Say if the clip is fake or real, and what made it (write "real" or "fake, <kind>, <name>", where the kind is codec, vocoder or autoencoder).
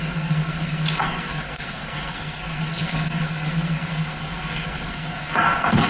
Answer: fake, codec, SNAC